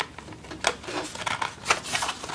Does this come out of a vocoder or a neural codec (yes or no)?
no